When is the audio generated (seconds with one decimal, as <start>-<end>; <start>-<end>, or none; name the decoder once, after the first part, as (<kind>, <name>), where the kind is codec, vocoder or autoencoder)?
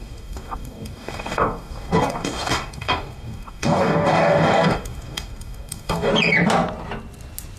0.0-6.1 (codec, DAC)